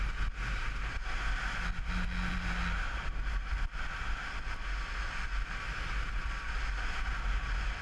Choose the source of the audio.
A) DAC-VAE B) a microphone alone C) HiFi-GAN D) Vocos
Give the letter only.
B